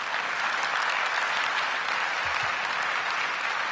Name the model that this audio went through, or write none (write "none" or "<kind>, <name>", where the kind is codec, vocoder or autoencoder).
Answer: none